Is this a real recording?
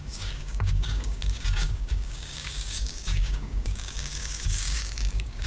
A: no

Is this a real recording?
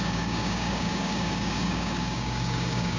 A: no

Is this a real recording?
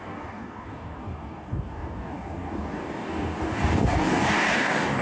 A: no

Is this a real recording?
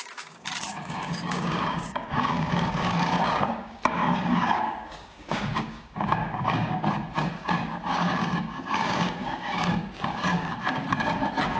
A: no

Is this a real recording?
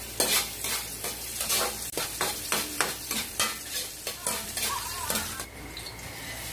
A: yes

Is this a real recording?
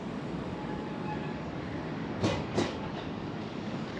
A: no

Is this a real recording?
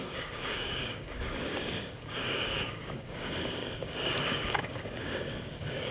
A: no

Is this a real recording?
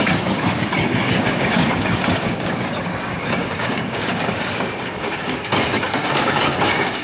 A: no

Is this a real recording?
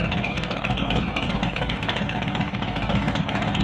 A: no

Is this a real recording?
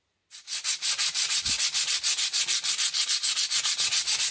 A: yes